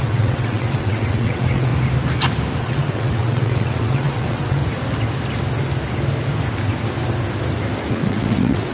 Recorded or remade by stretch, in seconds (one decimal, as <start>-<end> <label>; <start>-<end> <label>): 0.0-1.7 remade; 1.7-2.6 recorded; 2.6-4.6 remade; 4.6-7.9 recorded; 7.9-8.7 remade